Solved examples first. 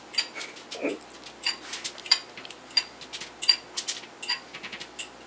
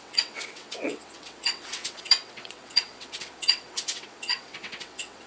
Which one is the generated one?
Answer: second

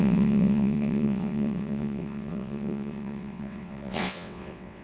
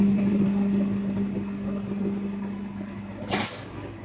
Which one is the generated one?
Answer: first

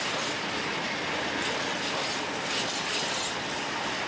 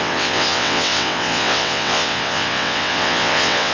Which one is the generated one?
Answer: second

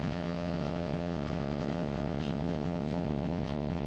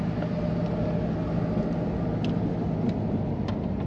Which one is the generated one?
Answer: first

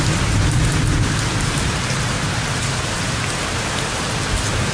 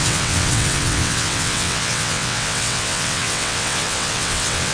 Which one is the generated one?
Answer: second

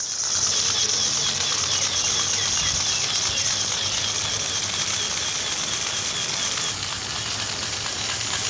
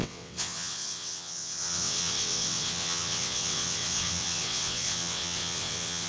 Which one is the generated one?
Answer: second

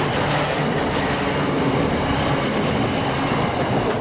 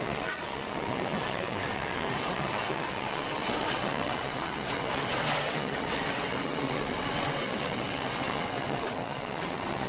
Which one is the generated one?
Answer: second